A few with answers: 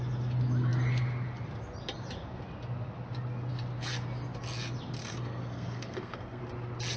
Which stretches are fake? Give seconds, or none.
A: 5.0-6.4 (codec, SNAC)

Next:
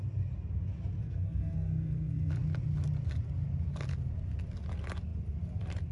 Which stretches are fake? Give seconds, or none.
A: 1.0-2.3 (codec, SNAC)